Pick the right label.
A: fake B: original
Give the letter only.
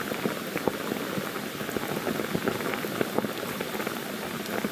B